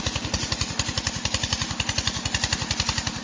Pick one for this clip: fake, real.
real